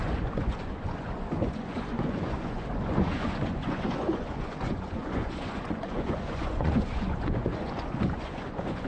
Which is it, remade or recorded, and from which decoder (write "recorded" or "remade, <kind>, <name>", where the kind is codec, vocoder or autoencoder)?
remade, vocoder, Vocos